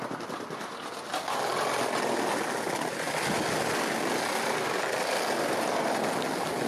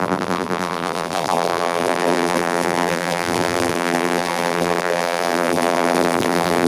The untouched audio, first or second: first